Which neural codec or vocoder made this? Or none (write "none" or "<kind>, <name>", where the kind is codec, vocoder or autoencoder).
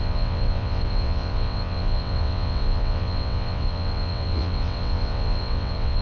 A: vocoder, WaveNeXt